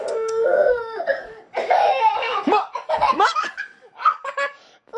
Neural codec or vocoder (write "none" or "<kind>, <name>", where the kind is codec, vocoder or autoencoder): codec, DAC